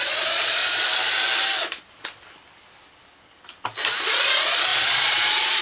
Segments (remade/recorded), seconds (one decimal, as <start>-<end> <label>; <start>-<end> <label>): 0.0-0.6 remade; 0.6-4.0 recorded; 4.0-5.6 remade